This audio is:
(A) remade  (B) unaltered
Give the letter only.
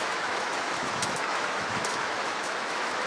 A